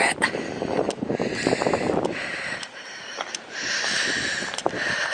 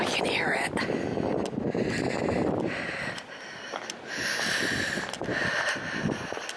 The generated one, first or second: first